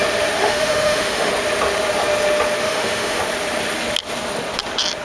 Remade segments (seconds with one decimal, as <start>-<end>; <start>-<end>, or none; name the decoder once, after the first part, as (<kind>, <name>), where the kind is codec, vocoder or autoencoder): 0.4-1.3 (autoencoder, DAC-VAE); 2.6-3.2